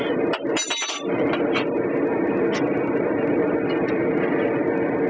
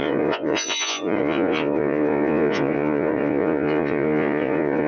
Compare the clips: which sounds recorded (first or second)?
first